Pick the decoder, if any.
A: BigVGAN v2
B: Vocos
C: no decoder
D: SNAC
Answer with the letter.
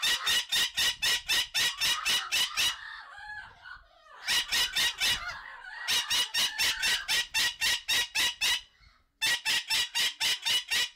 C